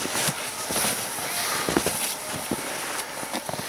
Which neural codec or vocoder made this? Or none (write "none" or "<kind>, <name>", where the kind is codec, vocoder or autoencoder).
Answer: none